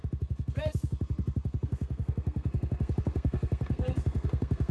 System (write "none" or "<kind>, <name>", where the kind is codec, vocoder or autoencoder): codec, SNAC